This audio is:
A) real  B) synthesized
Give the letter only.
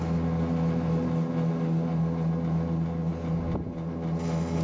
A